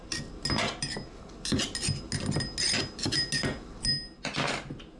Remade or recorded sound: recorded